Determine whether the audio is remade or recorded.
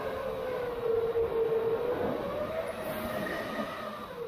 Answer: recorded